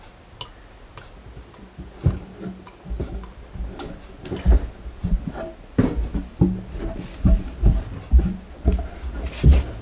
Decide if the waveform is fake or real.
real